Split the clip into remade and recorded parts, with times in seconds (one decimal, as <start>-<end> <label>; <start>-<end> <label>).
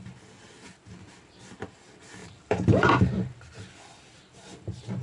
0.0-2.2 recorded; 2.2-3.0 remade; 3.0-5.0 recorded